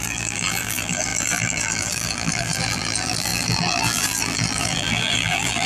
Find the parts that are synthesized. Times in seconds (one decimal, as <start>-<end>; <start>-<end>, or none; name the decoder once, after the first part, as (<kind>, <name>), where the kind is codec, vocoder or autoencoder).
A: 0.0-5.7 (vocoder, BigVGAN v2)